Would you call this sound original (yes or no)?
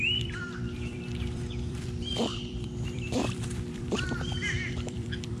no